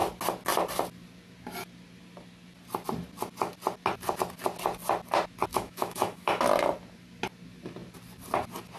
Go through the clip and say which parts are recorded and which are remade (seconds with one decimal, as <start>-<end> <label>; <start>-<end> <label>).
0.0-5.5 recorded; 5.5-6.4 remade; 6.4-8.8 recorded